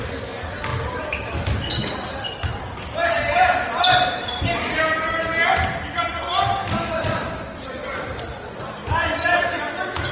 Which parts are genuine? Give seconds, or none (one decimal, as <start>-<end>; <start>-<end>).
0.0-10.1